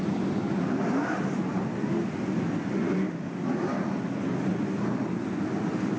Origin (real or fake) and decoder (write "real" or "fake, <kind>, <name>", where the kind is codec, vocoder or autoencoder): real